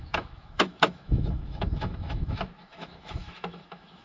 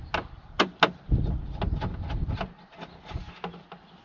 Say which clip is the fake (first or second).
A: first